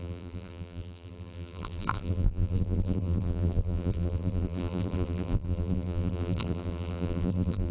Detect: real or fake fake